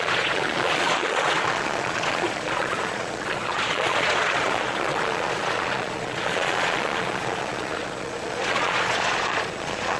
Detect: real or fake fake